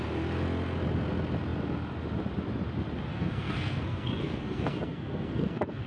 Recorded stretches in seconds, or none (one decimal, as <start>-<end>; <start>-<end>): 0.0-3.1